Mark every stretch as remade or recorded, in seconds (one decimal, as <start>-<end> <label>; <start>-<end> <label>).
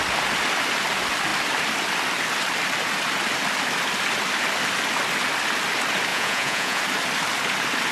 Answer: 0.0-6.1 recorded; 6.1-6.8 remade; 6.8-7.9 recorded